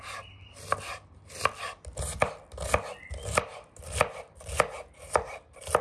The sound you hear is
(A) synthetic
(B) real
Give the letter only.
B